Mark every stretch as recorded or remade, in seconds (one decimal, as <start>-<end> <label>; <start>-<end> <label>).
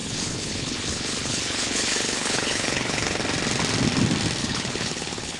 0.0-3.2 remade; 3.2-4.4 recorded; 4.4-5.4 remade